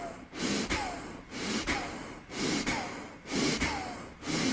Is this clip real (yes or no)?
yes